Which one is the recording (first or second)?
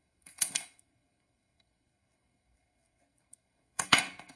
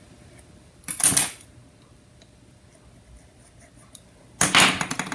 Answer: second